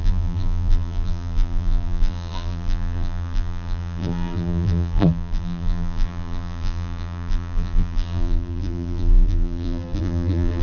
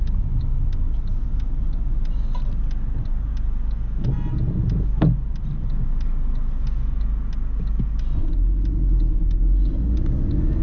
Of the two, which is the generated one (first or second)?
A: first